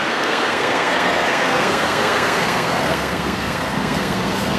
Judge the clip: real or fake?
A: fake